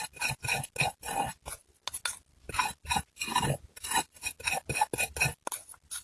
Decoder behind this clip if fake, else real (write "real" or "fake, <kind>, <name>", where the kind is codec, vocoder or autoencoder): real